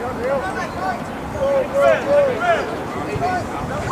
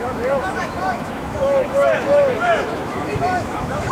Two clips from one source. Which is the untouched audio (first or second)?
first